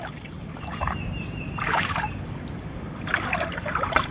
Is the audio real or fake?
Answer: fake